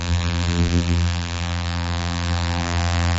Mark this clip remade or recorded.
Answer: remade